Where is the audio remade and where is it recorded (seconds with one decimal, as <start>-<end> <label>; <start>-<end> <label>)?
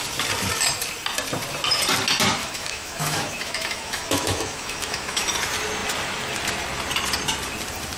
0.0-2.4 recorded; 2.4-5.2 remade; 5.2-8.0 recorded